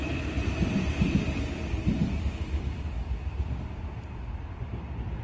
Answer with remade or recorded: recorded